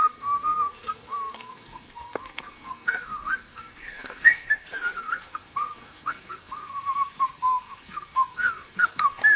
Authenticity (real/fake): fake